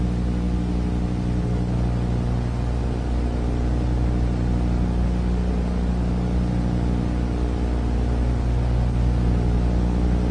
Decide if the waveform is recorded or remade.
recorded